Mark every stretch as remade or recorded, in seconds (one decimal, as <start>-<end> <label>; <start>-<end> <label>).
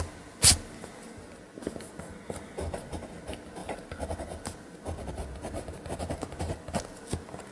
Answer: 0.0-7.5 recorded